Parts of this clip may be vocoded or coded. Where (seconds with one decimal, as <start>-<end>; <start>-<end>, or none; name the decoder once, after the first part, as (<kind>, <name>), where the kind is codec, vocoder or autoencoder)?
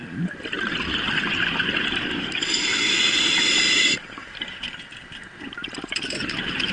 none